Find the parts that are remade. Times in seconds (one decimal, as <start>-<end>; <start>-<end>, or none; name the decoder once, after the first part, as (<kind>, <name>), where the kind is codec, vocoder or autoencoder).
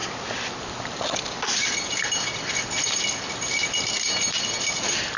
none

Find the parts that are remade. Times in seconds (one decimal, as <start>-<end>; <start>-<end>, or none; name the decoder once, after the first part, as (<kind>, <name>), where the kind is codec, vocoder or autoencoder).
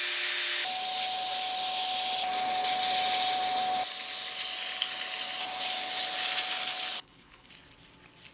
6.9-7.5 (codec, HILCodec)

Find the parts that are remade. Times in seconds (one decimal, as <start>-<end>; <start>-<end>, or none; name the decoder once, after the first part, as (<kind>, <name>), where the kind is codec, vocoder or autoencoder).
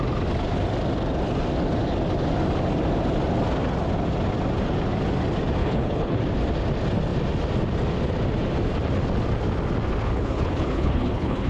5.6-6.2 (codec, HILCodec); 10.1-11.5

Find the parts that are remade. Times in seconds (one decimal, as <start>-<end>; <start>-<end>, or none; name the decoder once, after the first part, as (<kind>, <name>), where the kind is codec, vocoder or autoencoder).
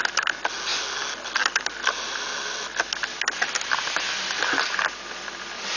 none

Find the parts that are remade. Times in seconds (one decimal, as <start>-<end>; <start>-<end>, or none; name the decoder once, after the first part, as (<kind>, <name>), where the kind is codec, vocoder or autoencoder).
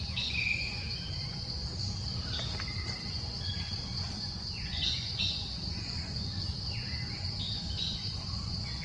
0.0-1.7 (vocoder, Vocos); 3.1-8.8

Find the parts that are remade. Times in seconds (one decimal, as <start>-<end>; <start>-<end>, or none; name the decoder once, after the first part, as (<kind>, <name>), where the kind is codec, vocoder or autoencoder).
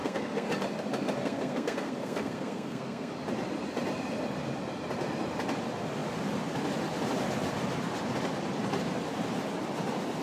0.0-0.5 (codec, SNAC); 1.2-3.1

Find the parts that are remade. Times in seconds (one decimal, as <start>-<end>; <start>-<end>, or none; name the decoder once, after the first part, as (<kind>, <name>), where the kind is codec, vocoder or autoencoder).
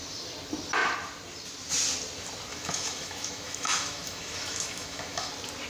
2.5-5.3 (autoencoder, DAC-VAE)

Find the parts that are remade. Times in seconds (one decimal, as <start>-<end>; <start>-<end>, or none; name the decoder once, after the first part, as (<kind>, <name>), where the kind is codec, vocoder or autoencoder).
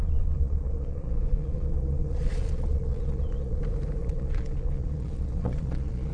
0.0-3.6 (vocoder, Vocos); 4.0-6.1